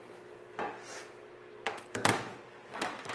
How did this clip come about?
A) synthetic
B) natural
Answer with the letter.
B